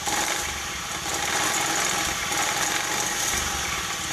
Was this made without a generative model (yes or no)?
yes